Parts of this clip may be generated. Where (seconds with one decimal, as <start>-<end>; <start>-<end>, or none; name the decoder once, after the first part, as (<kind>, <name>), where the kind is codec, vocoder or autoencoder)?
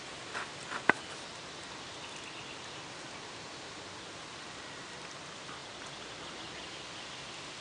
1.3-1.9 (vocoder, BigVGAN v2); 5.6-6.4